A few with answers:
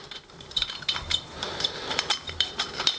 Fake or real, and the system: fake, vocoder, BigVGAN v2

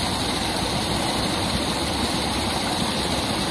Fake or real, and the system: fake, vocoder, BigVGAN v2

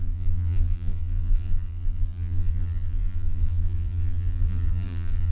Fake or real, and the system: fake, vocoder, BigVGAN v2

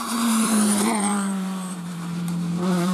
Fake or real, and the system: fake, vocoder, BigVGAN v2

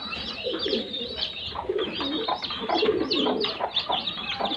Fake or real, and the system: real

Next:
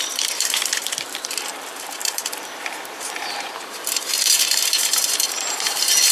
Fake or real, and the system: fake, vocoder, BigVGAN v2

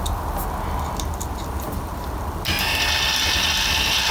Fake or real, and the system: real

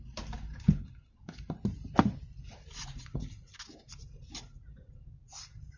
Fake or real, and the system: fake, vocoder, BigVGAN v2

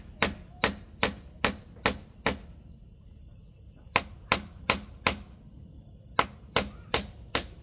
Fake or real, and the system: real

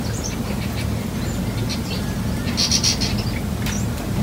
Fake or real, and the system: real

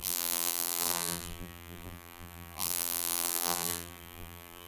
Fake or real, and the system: fake, vocoder, BigVGAN v2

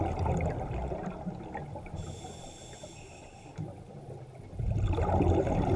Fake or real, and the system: real